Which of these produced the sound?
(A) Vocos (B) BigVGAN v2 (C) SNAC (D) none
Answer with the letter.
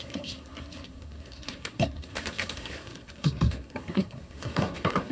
C